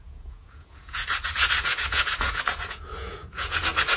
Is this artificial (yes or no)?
yes